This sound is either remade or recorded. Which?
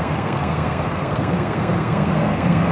remade